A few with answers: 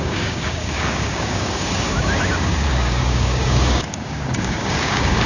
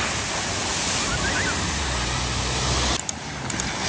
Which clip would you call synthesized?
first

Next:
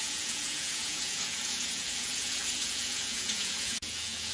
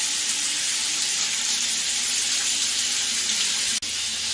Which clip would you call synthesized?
first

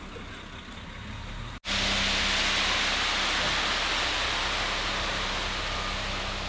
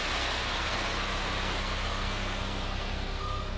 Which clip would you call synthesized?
second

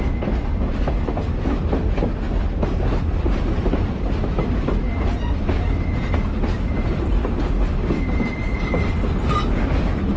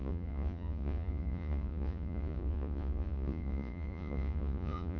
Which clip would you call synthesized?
second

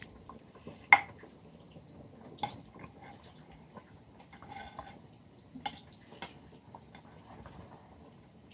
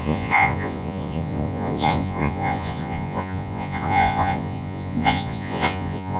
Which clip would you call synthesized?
second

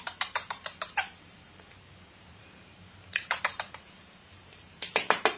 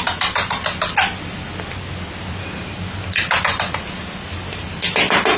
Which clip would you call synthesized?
first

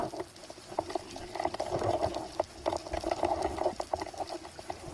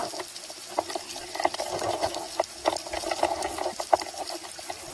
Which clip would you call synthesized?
second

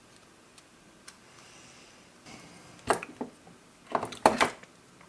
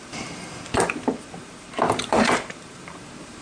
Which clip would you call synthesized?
second